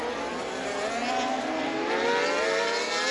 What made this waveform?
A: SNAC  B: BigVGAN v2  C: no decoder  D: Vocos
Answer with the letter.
C